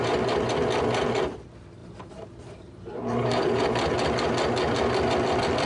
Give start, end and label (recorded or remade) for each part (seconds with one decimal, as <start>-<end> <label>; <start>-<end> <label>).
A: 0.0-1.8 recorded; 1.8-3.6 remade; 3.6-5.7 recorded